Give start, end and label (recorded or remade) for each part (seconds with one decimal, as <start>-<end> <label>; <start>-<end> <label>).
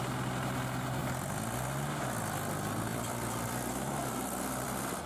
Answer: 0.0-2.9 recorded; 2.9-5.1 remade